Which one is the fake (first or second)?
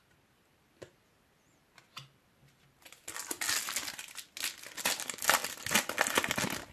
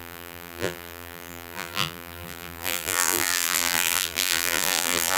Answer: second